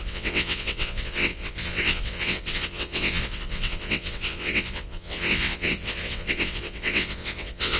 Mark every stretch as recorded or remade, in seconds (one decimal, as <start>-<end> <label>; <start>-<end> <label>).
0.0-7.8 remade